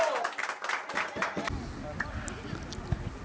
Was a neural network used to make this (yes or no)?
no